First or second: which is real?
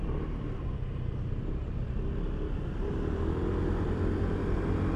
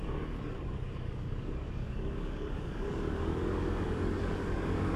first